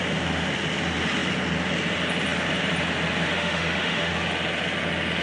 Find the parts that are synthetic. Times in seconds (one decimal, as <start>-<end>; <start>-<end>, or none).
3.3-4.1